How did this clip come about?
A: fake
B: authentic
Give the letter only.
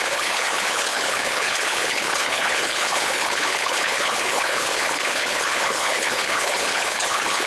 A